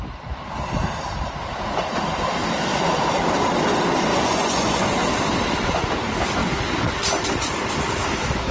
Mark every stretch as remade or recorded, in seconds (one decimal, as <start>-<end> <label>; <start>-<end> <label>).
0.0-4.1 recorded; 4.1-4.8 remade; 4.8-8.5 recorded